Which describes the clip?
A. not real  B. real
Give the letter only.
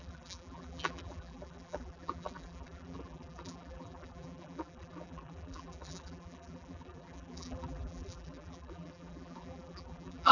A